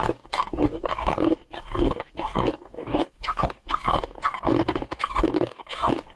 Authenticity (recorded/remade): remade